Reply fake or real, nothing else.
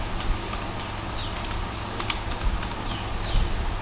real